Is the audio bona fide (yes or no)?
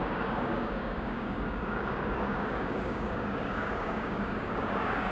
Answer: no